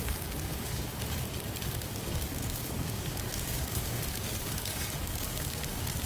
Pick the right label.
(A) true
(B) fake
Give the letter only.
B